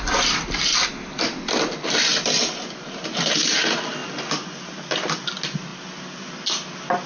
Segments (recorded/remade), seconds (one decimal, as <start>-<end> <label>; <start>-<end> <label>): 0.0-7.1 recorded